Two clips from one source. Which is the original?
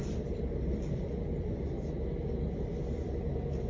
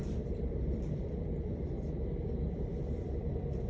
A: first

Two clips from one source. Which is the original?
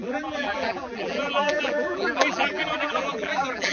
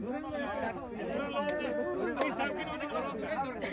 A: second